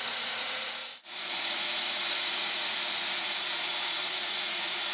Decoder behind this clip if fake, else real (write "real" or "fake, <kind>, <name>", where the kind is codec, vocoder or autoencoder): fake, vocoder, Vocos